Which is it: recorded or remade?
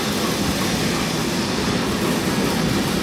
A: recorded